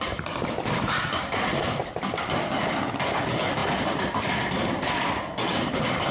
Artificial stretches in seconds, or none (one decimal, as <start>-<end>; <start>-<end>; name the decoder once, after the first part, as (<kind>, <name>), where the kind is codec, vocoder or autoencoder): 1.8-2.9 (vocoder, BigVGAN v2)